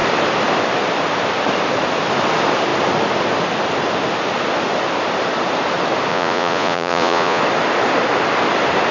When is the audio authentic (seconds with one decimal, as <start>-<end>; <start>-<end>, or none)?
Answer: 0.0-6.1; 7.4-8.9